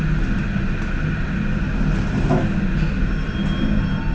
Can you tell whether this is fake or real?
real